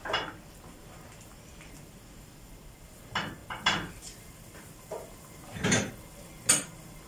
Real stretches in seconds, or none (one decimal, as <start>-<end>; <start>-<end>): 0.0-7.1